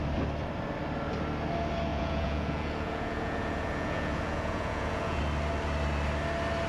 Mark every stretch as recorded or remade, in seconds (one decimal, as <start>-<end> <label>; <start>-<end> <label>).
0.0-1.9 recorded; 1.9-5.2 remade; 5.2-6.7 recorded